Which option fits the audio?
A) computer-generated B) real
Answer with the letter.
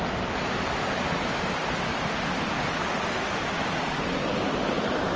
B